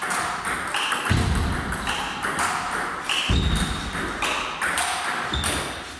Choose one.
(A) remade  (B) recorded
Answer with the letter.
B